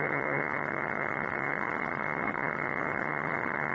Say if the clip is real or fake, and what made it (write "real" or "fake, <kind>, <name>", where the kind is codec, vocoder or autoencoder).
fake, vocoder, HiFi-GAN